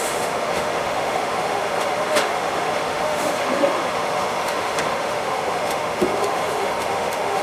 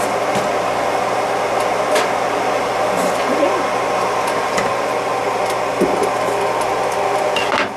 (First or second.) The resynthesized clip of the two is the first